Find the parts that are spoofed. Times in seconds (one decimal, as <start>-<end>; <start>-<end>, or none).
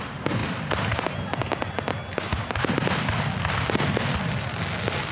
none